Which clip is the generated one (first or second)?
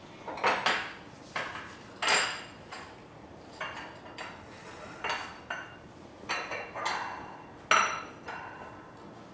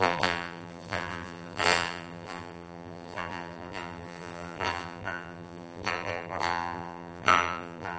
second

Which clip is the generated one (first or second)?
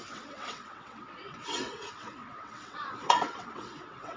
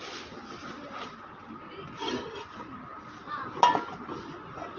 first